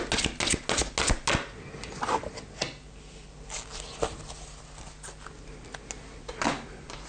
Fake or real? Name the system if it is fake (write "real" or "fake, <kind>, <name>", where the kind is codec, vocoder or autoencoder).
real